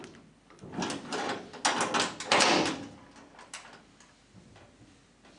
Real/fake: real